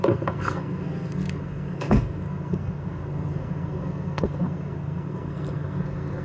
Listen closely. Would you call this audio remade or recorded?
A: remade